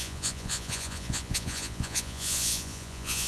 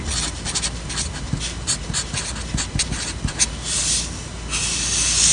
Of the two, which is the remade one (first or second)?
first